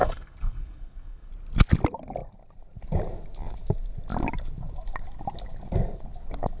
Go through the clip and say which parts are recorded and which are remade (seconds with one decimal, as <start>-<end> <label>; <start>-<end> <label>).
0.0-1.3 remade; 1.3-6.6 recorded